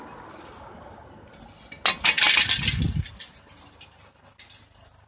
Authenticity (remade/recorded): recorded